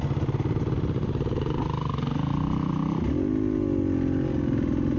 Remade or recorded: recorded